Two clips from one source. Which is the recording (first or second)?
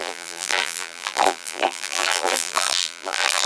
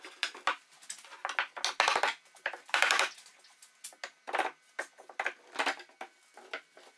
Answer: second